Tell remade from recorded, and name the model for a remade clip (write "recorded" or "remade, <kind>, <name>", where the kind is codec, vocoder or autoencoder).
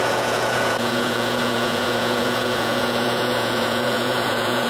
remade, vocoder, Vocos